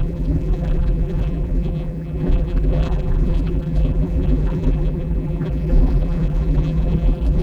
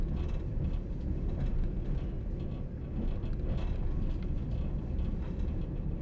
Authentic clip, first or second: second